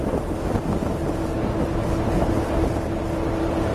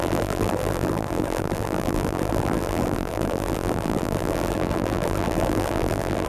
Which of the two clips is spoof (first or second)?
second